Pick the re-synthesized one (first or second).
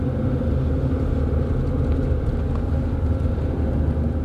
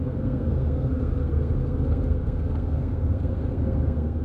second